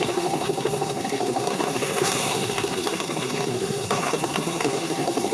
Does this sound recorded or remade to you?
remade